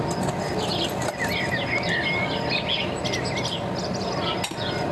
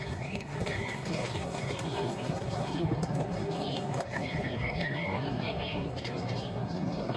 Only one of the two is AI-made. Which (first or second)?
second